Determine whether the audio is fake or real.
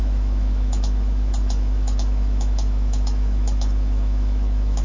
fake